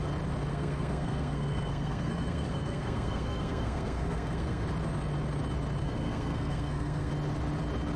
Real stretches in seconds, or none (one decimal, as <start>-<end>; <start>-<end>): 0.0-0.5; 4.6-5.8; 7.1-8.0